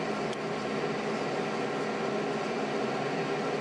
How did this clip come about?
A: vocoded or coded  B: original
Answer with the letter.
B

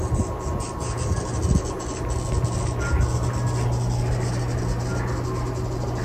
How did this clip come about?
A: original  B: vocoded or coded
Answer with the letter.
A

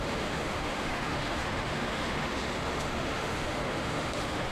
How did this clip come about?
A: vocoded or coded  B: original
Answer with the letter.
A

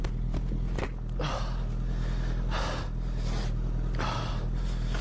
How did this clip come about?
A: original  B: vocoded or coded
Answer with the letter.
A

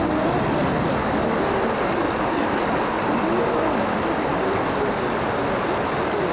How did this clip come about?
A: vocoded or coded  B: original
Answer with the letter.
B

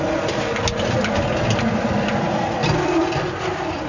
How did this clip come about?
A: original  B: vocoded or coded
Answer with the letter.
A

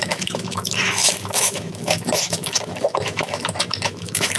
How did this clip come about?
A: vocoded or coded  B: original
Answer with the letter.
A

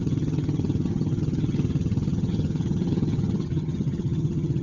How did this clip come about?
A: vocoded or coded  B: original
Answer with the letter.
A